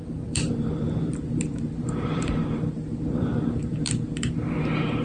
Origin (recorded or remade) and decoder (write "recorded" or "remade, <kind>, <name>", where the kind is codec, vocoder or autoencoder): remade, vocoder, BigVGAN v2